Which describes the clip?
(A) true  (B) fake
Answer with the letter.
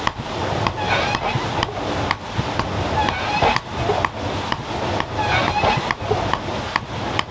A